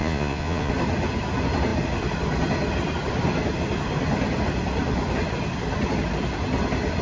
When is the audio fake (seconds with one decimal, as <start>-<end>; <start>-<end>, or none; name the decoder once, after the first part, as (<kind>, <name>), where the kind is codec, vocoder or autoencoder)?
0.0-0.7 (vocoder, Vocos)